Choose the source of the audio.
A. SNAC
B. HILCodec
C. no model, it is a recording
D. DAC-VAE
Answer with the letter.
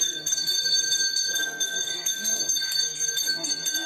A